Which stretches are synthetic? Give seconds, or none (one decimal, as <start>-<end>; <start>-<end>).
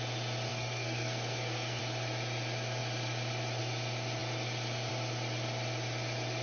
0.5-1.8